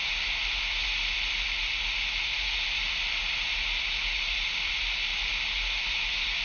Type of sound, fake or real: real